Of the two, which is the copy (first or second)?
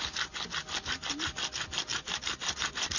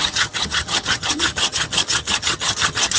second